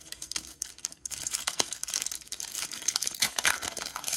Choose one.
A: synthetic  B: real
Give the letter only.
A